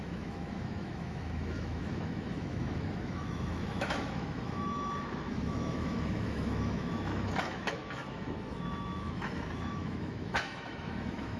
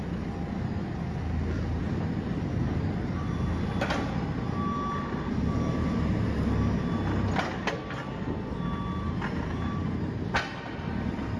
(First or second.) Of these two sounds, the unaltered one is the second